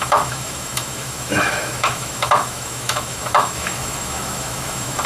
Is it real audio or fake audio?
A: fake